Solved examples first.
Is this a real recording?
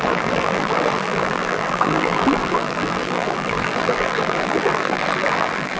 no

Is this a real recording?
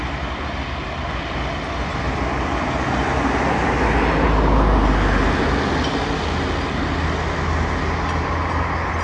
yes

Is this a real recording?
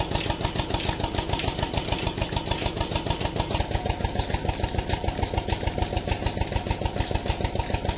yes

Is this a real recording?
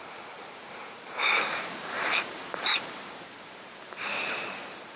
no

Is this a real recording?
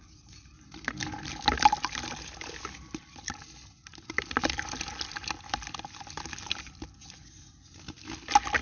yes